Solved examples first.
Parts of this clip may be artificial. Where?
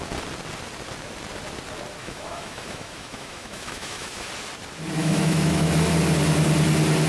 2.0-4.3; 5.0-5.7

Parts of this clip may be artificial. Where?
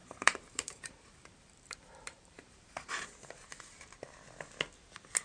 0.0-3.1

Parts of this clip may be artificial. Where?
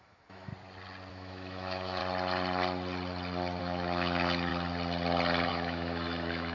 0.0-0.5; 1.1-2.0; 3.6-4.5; 5.5-6.5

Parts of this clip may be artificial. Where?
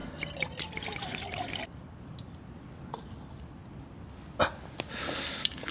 none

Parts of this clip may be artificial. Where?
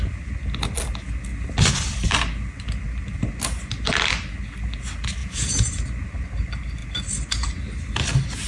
5.2-5.7